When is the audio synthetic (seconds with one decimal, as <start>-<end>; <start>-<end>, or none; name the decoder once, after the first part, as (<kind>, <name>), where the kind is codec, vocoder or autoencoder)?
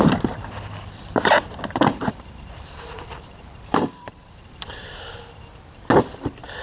1.9-4.9 (vocoder, BigVGAN v2)